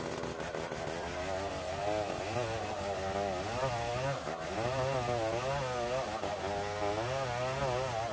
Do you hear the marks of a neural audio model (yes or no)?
no